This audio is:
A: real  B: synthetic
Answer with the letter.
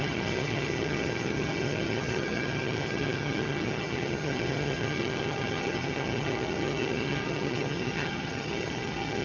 B